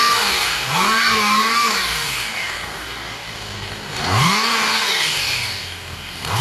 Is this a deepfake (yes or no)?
yes